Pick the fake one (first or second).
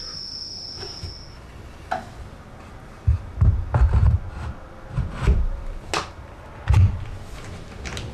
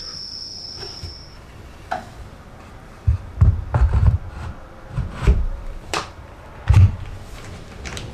second